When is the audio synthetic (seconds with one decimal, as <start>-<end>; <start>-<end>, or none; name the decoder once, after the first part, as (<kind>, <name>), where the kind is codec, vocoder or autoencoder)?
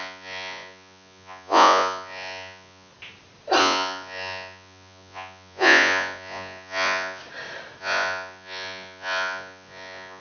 0.0-2.9 (vocoder, Vocos); 3.6-7.2; 7.8-10.2